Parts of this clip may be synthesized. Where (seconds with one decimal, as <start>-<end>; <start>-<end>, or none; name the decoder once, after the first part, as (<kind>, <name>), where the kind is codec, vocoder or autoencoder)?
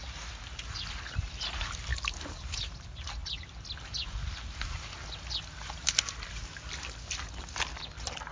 1.9-2.7 (vocoder, BigVGAN v2)